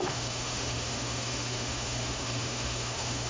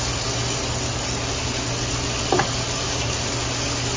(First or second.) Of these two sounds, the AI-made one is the first